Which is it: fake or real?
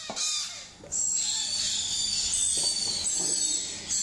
real